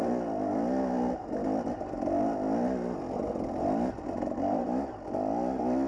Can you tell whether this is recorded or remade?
recorded